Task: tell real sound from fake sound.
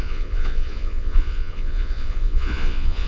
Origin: fake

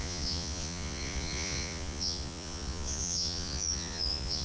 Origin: fake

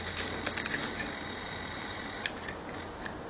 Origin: real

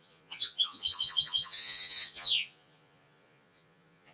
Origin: fake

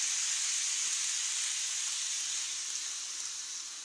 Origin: real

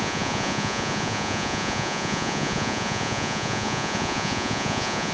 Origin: fake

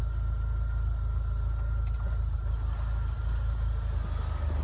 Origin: real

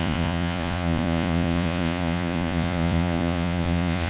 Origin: fake